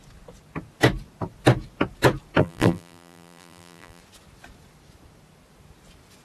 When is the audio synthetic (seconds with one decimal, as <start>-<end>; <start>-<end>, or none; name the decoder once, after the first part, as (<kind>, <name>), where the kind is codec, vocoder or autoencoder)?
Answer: 2.4-4.0 (vocoder, BigVGAN v2)